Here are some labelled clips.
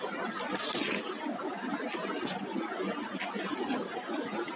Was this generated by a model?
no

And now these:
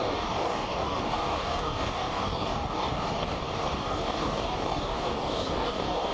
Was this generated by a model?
yes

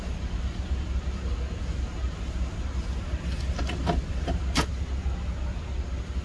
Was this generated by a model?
no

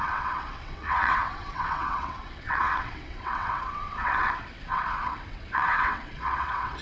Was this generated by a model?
yes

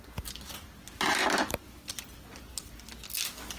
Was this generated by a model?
no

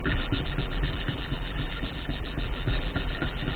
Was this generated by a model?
yes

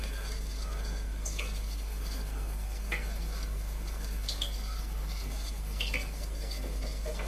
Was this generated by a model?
yes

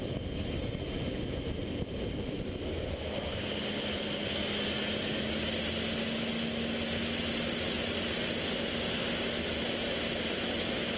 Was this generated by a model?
no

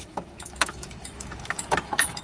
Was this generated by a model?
yes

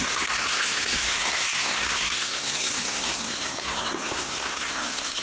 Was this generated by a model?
yes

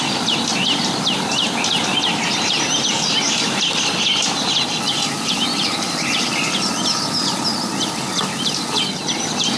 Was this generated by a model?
no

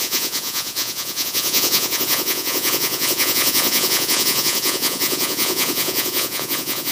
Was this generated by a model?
yes